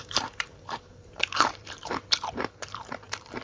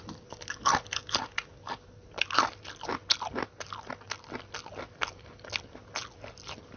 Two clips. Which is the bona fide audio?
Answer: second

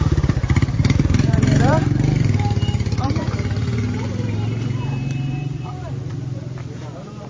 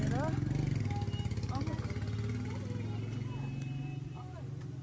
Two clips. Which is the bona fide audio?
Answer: second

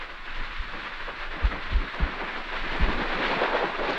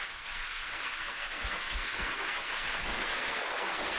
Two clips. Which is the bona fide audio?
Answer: first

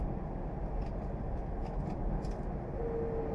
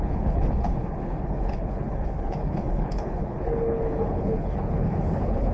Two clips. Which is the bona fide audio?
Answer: first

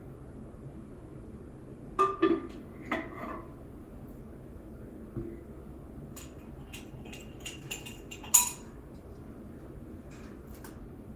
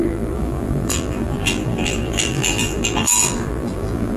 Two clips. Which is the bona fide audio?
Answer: first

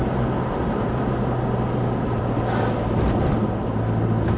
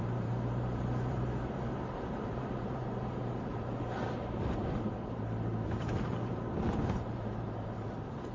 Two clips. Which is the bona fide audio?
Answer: first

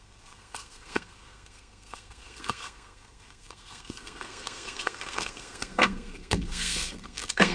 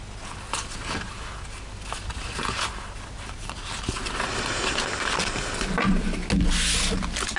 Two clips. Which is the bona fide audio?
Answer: second